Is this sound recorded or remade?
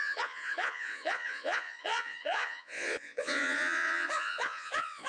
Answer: remade